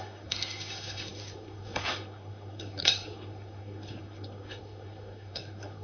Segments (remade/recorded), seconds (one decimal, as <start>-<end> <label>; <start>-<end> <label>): 0.0-5.8 remade